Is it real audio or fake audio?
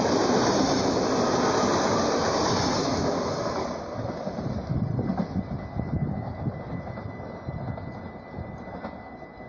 real